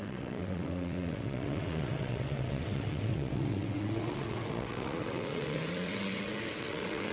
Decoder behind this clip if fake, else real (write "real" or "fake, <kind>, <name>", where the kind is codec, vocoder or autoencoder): fake, vocoder, WaveNeXt